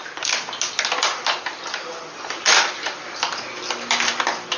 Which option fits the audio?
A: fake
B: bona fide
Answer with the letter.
B